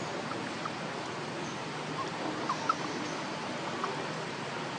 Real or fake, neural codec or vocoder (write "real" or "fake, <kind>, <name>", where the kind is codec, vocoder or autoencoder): real